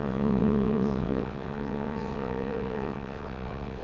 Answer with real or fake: fake